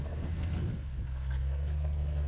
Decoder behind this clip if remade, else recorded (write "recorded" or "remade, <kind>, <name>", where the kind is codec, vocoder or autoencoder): remade, codec, SNAC